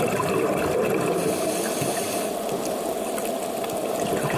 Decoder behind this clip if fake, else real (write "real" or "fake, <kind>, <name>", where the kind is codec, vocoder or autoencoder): real